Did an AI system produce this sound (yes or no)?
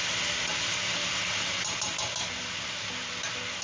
no